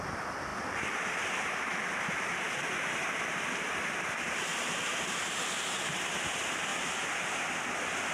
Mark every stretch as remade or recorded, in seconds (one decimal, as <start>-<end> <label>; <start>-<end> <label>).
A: 0.0-0.5 recorded; 0.5-2.3 remade; 2.3-8.1 recorded